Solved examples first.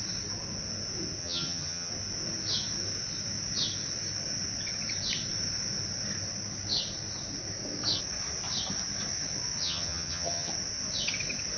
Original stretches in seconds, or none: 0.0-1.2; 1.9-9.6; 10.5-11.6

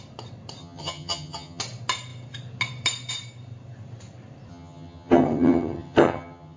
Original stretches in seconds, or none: 0.0-0.6; 1.6-4.5